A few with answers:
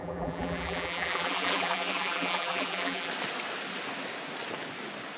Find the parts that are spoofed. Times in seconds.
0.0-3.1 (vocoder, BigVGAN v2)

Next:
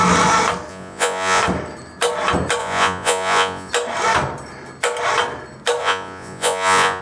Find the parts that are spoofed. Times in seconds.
0.7-1.4 (vocoder, Vocos); 2.6-3.7; 5.8-7.0

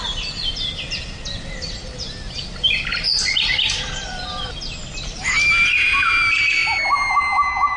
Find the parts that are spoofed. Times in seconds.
2.9-4.6 (vocoder, BigVGAN v2); 6.6-7.2

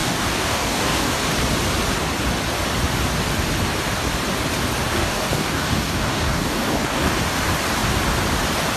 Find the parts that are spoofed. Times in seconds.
0.0-1.1 (codec, DAC); 4.9-7.2